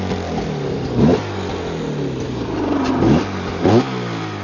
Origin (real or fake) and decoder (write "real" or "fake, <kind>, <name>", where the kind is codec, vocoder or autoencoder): real